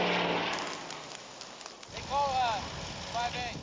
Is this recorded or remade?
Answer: recorded